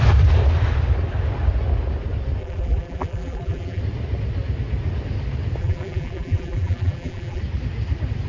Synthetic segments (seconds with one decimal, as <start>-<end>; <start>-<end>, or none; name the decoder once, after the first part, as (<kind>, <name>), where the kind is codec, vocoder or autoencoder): 2.4-3.8 (vocoder, BigVGAN v2); 5.6-7.4